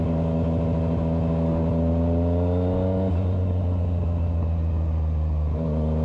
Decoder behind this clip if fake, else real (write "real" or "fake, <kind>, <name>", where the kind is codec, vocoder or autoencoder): real